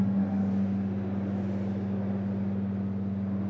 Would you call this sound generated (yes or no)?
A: no